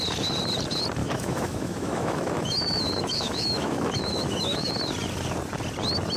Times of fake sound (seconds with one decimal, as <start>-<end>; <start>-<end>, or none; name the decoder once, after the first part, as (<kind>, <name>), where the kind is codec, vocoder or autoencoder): 1.0-4.7 (autoencoder, DAC-VAE)